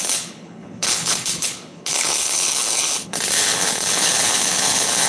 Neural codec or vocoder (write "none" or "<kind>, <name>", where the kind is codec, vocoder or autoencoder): codec, HILCodec